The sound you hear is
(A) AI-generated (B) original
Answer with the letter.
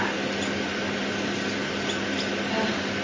B